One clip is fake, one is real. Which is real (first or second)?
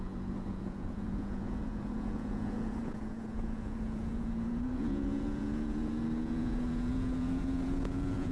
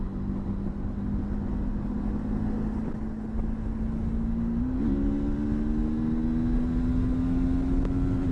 second